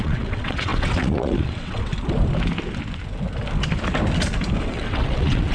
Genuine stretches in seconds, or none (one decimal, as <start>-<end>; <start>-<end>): 1.9-4.6